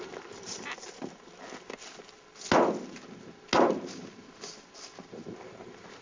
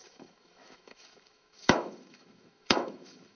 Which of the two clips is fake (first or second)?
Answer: second